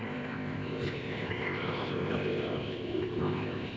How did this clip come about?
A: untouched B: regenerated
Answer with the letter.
B